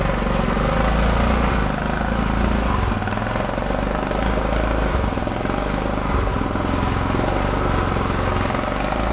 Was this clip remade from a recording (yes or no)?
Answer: no